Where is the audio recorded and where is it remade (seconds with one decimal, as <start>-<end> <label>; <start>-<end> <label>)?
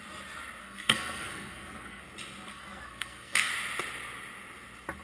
0.0-0.6 recorded; 0.6-2.0 remade; 2.0-2.5 recorded; 2.5-3.5 remade; 3.5-5.0 recorded